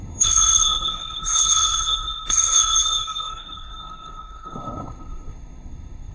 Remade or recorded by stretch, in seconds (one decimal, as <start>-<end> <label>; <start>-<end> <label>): 0.0-6.1 remade